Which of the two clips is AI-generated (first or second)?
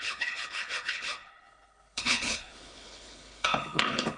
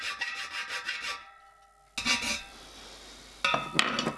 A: first